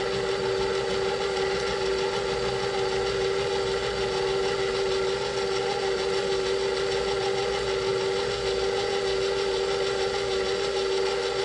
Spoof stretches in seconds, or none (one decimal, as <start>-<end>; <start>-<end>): none